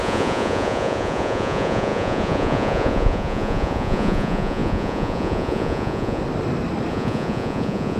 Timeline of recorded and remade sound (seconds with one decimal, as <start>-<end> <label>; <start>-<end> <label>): 0.0-6.2 remade; 6.2-6.9 recorded; 6.9-8.0 remade